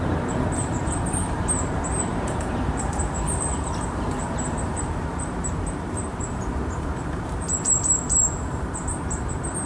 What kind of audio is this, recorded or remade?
remade